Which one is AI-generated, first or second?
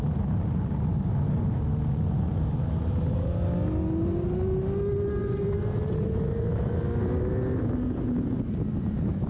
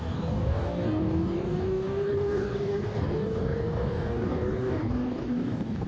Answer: second